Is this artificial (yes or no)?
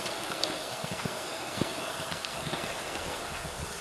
yes